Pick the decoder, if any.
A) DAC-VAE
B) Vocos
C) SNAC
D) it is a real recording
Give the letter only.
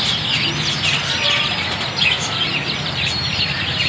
D